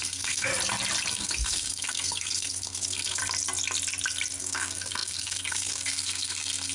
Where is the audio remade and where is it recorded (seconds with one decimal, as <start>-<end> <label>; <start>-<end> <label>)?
0.0-0.5 remade; 0.5-1.1 recorded; 1.1-3.2 remade; 3.2-4.4 recorded; 4.4-6.7 remade